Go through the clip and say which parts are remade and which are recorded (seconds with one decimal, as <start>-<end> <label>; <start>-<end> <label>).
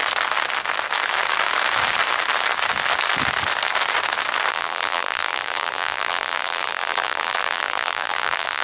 0.0-4.5 recorded; 4.5-8.6 remade